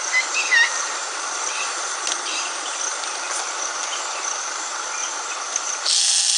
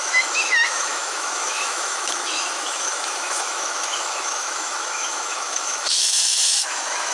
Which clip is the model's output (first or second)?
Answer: second